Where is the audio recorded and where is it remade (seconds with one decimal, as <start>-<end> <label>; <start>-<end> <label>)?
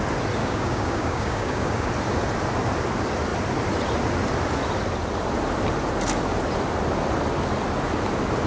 0.0-0.4 recorded; 0.4-1.9 remade; 1.9-8.5 recorded